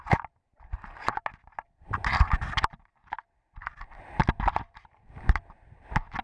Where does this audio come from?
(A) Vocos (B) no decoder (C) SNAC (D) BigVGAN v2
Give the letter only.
B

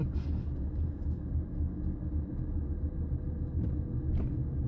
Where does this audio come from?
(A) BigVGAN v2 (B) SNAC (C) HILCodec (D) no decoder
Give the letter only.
D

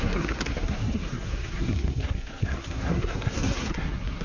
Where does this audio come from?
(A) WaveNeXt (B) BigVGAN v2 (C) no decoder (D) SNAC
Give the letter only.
D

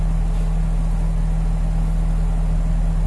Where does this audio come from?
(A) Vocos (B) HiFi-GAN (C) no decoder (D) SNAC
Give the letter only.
C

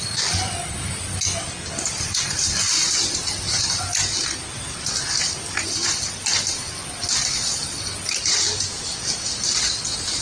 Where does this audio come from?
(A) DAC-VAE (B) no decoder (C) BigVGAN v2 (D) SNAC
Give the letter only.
B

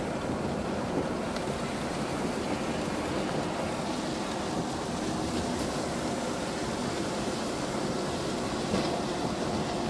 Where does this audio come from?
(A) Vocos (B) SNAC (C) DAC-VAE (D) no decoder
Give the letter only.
D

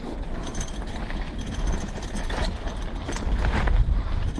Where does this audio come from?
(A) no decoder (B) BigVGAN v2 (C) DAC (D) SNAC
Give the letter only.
A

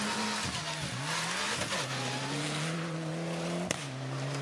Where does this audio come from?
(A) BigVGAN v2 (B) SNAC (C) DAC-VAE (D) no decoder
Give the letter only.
D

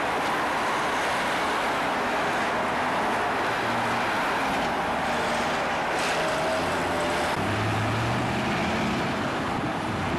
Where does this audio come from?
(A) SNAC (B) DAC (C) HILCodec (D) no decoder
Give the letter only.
D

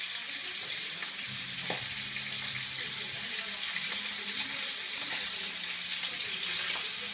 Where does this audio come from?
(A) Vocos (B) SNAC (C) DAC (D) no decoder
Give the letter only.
D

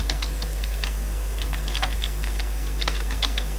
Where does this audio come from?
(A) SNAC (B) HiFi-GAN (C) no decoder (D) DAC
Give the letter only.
A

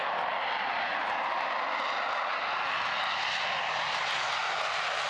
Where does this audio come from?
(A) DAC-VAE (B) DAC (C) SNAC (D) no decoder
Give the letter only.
D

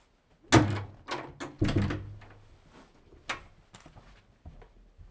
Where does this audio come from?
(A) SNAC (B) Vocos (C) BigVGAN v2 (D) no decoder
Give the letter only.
D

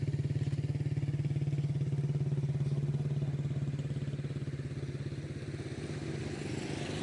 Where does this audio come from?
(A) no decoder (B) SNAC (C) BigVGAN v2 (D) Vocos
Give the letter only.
A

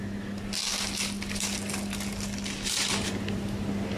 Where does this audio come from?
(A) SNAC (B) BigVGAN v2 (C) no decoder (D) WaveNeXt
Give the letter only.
C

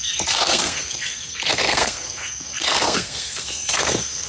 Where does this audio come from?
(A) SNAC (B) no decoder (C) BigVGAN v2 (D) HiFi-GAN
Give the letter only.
A